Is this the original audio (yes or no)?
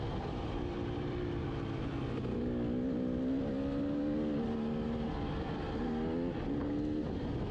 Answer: yes